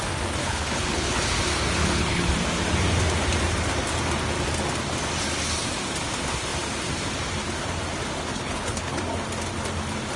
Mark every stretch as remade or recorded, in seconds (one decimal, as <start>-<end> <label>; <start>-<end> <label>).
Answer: 0.0-0.4 recorded; 0.4-1.2 remade; 1.2-1.8 recorded; 1.8-2.3 remade; 2.3-8.3 recorded; 8.3-9.0 remade; 9.0-10.2 recorded